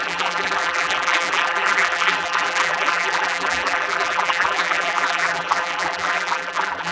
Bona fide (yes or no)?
no